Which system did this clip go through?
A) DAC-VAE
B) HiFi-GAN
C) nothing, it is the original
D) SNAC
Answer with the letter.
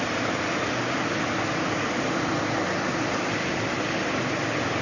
C